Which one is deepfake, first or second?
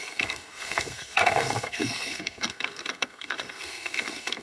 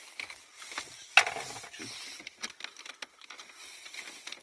first